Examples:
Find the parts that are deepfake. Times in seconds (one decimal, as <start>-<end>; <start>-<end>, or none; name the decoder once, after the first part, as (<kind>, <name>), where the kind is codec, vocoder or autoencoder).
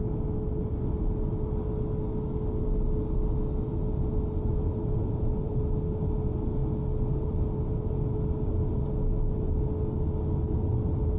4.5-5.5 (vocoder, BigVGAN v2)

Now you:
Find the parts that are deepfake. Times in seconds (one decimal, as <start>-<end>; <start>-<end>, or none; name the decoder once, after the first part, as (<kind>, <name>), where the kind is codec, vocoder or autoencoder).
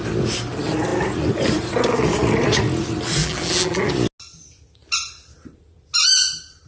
3.2-3.8 (vocoder, BigVGAN v2)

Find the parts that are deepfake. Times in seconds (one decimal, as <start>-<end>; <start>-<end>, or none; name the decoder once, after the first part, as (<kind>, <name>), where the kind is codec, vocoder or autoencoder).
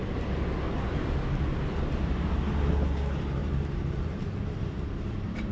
3.4-5.5 (vocoder, BigVGAN v2)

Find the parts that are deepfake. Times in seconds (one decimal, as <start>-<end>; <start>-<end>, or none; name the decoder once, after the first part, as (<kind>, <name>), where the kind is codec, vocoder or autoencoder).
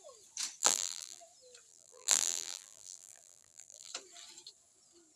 0.6-1.2 (vocoder, BigVGAN v2); 1.7-3.9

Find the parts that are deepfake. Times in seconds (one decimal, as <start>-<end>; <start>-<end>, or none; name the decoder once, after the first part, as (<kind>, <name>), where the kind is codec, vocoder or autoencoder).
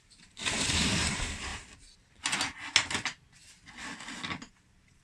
0.0-1.5 (vocoder, BigVGAN v2); 4.5-5.0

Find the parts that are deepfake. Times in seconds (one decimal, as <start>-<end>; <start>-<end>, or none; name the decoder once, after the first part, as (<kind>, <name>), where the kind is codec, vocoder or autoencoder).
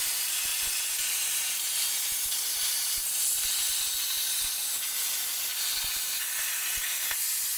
none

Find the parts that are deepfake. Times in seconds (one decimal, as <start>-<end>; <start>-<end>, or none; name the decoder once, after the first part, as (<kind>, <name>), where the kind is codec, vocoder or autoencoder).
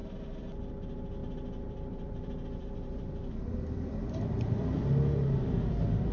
0.0-0.7 (vocoder, BigVGAN v2); 1.2-4.9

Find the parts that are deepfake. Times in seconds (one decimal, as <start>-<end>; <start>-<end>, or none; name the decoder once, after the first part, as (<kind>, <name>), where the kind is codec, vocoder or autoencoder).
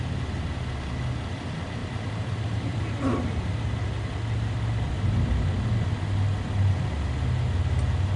1.8-3.5 (vocoder, BigVGAN v2)